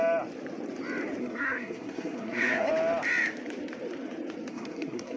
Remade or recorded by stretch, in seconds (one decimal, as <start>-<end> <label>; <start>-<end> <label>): 0.0-1.2 recorded; 1.2-2.7 remade; 2.7-4.5 recorded; 4.5-5.2 remade